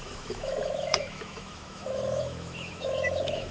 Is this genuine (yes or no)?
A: no